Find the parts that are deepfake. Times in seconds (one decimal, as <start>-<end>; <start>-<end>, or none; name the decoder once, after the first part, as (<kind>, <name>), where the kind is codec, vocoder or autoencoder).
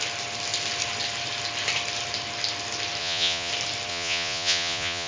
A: 3.0-3.5 (vocoder, Vocos); 3.9-5.1